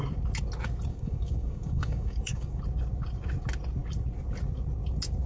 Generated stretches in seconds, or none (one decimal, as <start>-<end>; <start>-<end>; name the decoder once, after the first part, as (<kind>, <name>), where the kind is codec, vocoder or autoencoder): 0.9-2.6 (codec, DAC)